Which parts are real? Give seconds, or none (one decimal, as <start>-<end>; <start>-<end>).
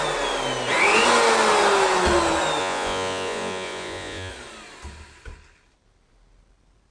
0.0-2.6; 4.3-6.9